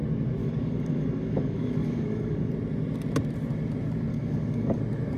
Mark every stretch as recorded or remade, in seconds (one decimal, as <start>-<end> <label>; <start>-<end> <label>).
0.0-0.4 recorded; 0.4-2.5 remade; 2.5-4.1 recorded; 4.1-4.8 remade; 4.8-5.2 recorded